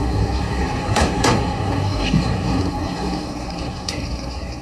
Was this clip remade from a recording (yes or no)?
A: yes